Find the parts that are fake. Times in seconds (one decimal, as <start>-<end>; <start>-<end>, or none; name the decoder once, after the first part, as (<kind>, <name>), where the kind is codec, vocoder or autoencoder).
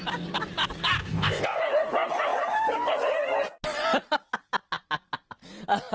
1.0-1.6 (codec, ZipCodec)